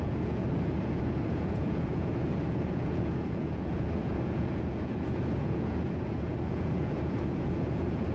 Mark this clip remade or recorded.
remade